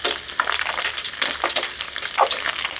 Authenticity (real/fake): real